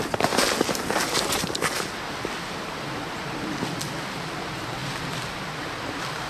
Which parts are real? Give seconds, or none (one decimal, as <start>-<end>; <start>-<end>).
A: 0.0-6.3